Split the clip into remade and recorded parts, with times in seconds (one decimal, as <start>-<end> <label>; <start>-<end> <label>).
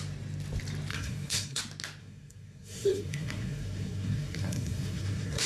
0.0-0.9 recorded; 0.9-1.6 remade; 1.6-2.0 recorded; 2.0-5.5 remade